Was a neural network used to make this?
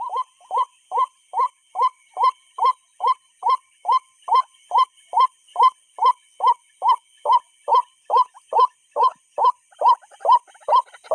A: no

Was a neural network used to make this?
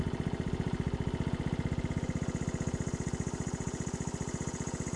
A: no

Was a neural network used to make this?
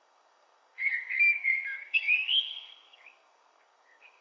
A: yes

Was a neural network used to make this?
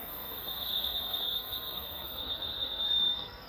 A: yes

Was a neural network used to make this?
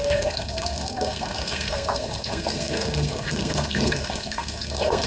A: yes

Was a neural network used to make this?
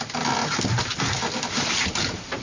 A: no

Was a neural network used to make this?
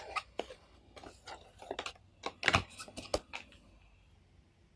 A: no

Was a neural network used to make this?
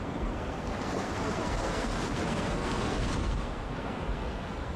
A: yes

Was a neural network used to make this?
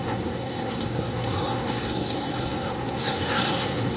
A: yes